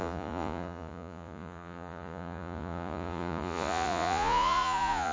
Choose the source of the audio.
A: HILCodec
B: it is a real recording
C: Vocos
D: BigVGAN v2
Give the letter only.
C